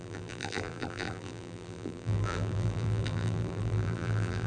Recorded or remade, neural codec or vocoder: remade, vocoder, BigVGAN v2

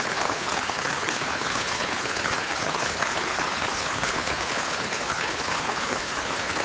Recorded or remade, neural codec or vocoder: remade, codec, HILCodec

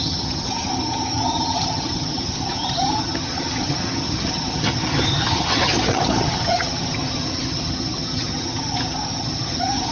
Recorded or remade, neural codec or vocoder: remade, vocoder, HiFi-GAN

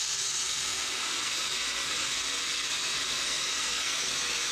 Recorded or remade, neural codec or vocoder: remade, codec, SNAC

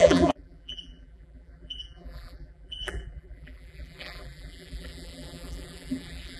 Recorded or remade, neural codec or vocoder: remade, vocoder, BigVGAN v2